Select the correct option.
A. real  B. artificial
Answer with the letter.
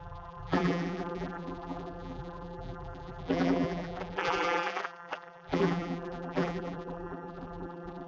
B